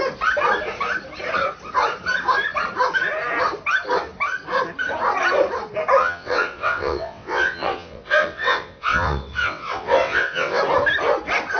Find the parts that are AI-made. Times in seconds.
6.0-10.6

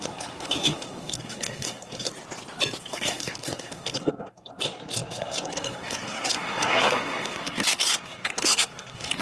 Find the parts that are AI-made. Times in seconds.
0.0-2.1; 2.8-9.2

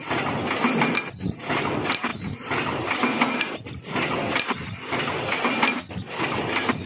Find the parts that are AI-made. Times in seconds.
none

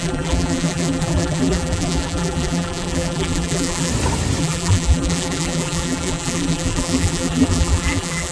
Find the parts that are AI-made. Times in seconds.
0.0-3.9; 4.4-8.3

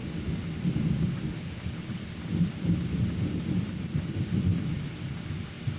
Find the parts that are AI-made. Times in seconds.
1.4-2.0